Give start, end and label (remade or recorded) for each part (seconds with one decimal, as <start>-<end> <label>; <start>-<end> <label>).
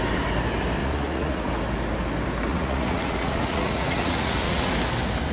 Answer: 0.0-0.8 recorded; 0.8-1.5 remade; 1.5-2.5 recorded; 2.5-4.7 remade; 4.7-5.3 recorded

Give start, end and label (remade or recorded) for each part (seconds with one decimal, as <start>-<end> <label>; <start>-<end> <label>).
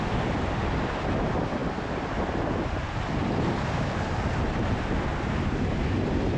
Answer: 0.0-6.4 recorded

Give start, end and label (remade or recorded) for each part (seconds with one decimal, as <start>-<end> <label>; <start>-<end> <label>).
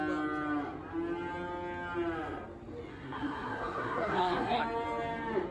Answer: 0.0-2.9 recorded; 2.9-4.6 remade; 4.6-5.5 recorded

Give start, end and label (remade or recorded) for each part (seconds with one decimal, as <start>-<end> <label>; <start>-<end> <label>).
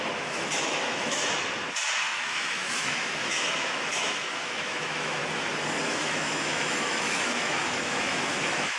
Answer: 0.0-1.2 remade; 1.2-2.0 recorded; 2.0-5.2 remade; 5.2-5.8 recorded; 5.8-8.8 remade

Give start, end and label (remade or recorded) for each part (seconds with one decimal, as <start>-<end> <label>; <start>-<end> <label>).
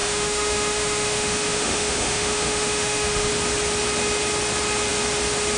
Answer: 0.0-3.3 remade; 3.3-5.6 recorded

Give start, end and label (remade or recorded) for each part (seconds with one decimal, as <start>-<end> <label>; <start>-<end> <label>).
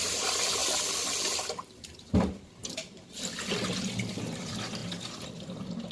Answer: 0.0-2.6 recorded; 2.6-3.2 remade; 3.2-5.9 recorded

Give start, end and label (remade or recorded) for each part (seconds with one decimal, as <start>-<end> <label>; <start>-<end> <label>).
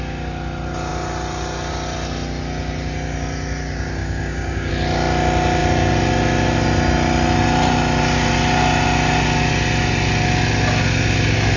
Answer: 0.0-4.0 recorded; 4.0-4.7 remade; 4.7-11.6 recorded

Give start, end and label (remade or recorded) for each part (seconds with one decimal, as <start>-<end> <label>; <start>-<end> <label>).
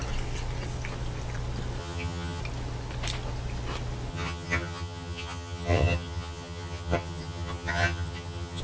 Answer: 0.0-1.8 recorded; 1.8-2.4 remade; 2.4-4.1 recorded; 4.1-8.6 remade